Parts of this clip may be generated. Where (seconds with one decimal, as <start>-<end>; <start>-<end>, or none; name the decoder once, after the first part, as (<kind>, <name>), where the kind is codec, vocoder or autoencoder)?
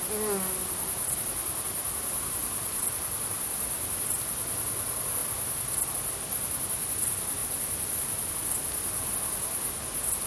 2.4-4.0 (vocoder, BigVGAN v2); 7.4-8.3